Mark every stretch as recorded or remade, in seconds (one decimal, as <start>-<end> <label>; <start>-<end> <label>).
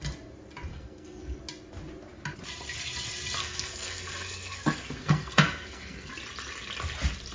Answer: 0.0-0.7 recorded; 0.7-1.4 remade; 1.4-3.4 recorded; 3.4-6.1 remade; 6.1-7.3 recorded